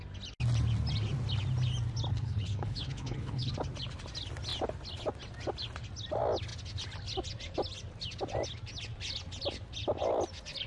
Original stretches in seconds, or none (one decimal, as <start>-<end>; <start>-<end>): 0.0-2.1; 3.5-10.7